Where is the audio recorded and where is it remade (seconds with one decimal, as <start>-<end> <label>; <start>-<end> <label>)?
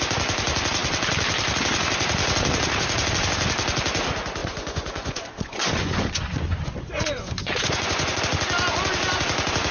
0.0-4.4 recorded; 4.4-8.2 remade; 8.2-9.7 recorded